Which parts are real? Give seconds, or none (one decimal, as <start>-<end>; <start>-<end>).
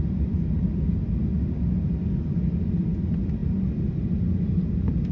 0.0-5.1